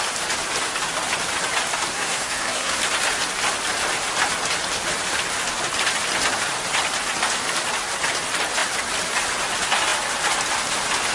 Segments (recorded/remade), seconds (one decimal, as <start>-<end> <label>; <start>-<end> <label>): 0.0-1.9 recorded; 1.9-2.8 remade; 2.8-11.1 recorded